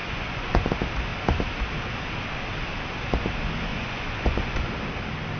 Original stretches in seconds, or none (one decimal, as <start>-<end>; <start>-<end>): 0.7-3.7; 4.7-5.4